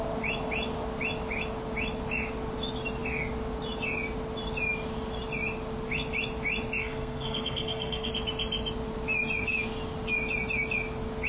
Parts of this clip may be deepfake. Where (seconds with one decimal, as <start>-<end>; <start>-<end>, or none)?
6.8-8.1